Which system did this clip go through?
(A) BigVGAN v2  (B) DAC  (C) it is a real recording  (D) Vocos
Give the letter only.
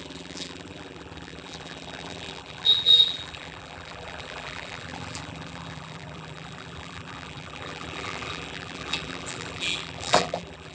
A